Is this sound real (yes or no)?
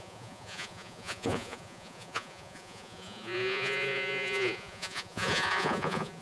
no